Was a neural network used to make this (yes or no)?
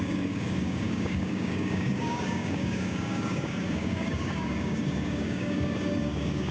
yes